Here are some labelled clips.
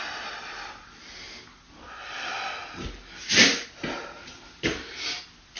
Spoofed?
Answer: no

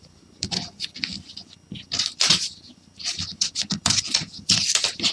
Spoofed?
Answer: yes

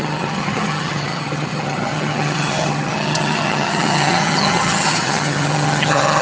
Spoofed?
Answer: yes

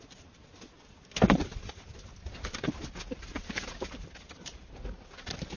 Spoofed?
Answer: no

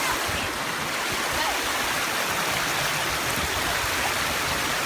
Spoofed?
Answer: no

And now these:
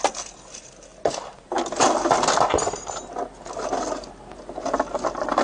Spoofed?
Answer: no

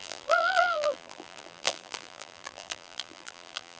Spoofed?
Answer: yes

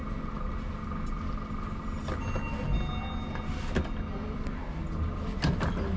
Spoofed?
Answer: no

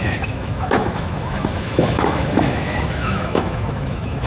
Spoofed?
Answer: yes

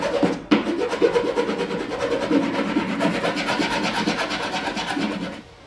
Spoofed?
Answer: no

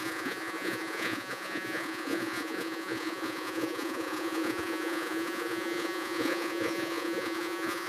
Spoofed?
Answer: yes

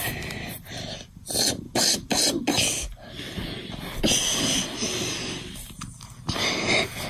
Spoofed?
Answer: no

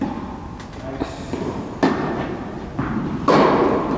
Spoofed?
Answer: no